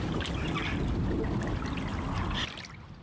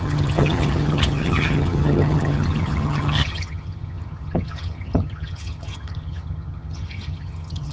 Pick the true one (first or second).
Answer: first